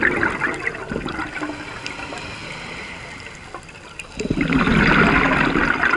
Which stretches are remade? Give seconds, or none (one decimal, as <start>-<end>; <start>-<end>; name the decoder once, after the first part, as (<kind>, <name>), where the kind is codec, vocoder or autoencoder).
none